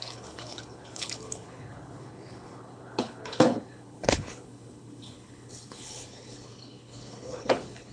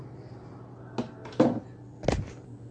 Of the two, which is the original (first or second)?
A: second